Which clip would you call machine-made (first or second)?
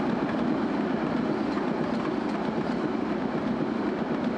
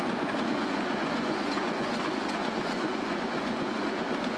second